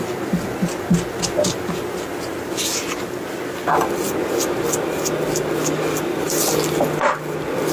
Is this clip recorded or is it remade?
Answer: recorded